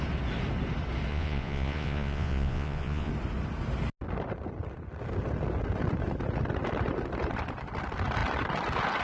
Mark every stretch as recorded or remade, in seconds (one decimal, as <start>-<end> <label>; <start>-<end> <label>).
0.0-1.1 recorded; 1.1-3.1 remade; 3.1-9.0 recorded